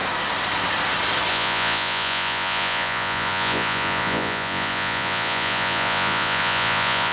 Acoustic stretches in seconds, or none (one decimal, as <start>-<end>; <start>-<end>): 0.0-1.3